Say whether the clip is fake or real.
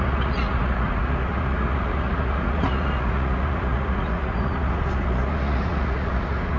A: fake